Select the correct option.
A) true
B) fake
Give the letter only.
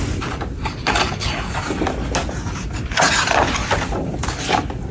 A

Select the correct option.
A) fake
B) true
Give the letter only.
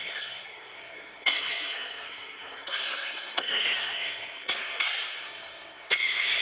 A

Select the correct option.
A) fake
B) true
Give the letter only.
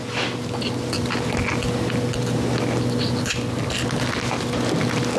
B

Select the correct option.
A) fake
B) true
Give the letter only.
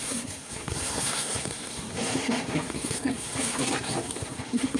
A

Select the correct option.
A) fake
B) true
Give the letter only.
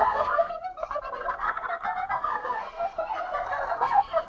A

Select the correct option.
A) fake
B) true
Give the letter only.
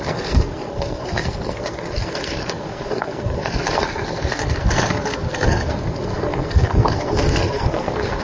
A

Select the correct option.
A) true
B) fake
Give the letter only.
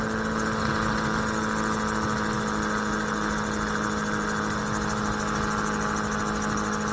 A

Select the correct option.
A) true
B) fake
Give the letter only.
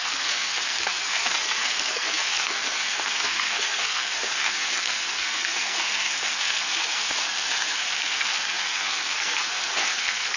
B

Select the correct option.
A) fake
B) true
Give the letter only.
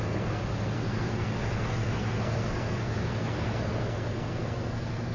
A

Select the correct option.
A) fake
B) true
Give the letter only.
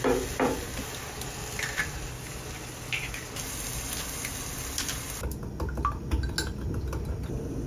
B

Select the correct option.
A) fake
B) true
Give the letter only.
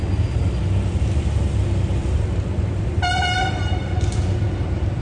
B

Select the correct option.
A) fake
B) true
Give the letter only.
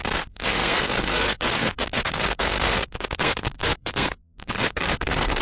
A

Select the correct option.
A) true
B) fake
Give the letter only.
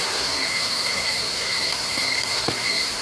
B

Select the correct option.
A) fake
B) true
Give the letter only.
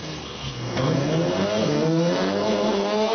A